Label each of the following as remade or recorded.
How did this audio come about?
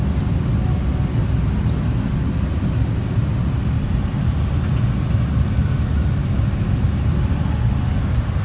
recorded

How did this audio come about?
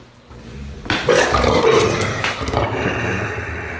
recorded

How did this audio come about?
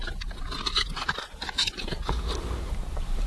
remade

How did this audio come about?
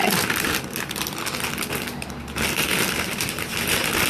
recorded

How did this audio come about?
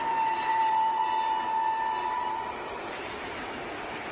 remade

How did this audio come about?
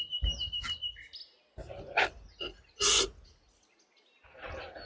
recorded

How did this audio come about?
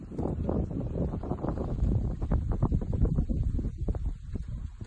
remade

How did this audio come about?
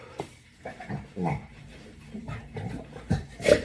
remade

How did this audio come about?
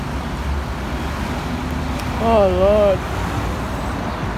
recorded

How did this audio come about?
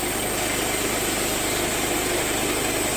recorded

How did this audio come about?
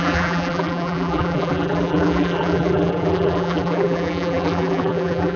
remade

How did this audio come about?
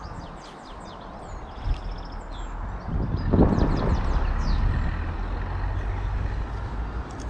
recorded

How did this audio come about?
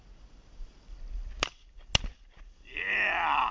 recorded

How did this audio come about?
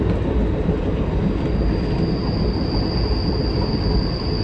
recorded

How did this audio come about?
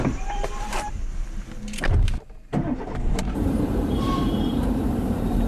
remade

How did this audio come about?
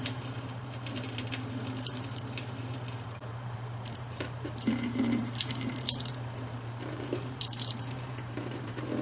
remade